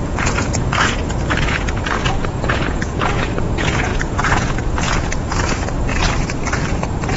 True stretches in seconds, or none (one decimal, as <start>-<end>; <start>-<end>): 5.9-6.8

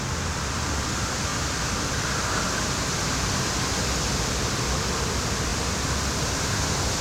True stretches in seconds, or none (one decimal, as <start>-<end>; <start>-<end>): 0.0-7.0

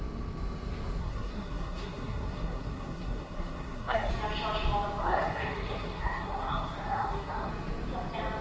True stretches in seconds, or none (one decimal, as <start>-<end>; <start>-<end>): 0.0-1.0; 4.1-5.0; 7.5-8.4